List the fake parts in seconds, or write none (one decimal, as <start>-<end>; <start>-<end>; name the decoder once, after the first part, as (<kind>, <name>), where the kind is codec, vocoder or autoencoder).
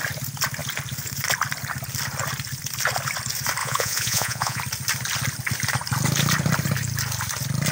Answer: 3.6-4.6 (vocoder, Vocos)